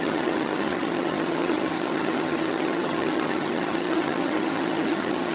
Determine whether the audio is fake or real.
fake